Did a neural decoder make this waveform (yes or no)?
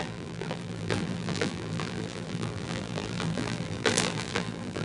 yes